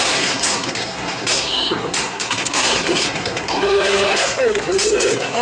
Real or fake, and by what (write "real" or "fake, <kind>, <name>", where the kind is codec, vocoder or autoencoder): fake, codec, SNAC